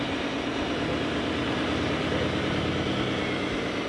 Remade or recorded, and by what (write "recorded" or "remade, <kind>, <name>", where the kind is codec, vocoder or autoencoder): recorded